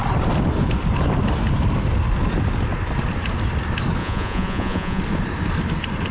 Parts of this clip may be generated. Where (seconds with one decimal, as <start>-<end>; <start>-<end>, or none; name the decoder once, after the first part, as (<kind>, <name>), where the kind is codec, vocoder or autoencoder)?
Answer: 4.0-5.0 (vocoder, Vocos)